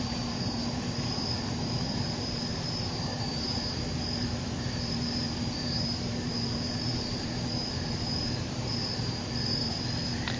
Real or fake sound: fake